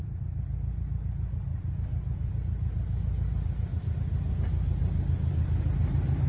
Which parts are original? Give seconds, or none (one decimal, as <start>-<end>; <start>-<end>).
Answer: 0.0-6.3